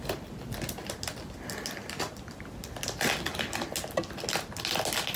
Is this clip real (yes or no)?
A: yes